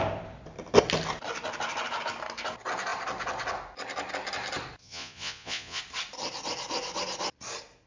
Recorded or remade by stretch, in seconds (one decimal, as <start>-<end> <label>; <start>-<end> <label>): 0.0-4.8 recorded; 4.8-5.8 remade; 5.8-7.9 recorded